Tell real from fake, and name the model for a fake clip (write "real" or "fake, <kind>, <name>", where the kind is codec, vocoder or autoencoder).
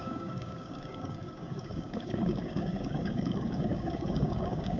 fake, codec, DAC